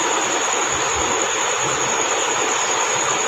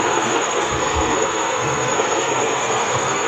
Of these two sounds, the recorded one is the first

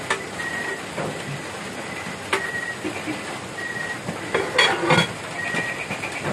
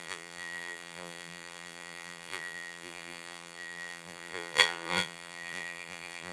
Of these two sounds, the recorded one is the first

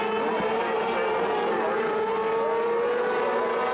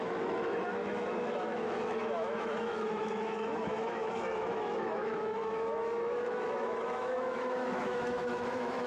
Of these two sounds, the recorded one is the first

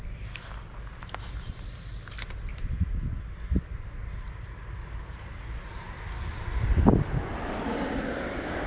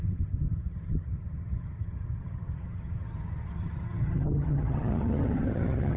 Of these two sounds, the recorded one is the first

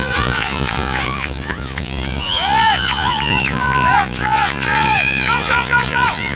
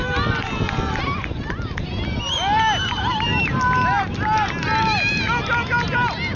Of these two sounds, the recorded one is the second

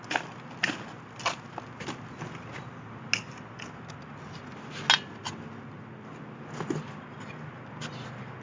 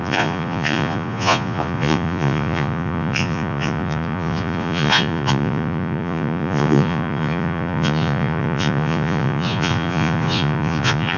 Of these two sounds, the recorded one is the first